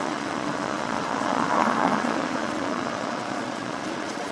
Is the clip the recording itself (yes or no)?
no